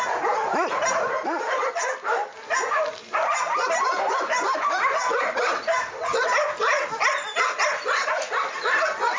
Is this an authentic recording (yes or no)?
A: yes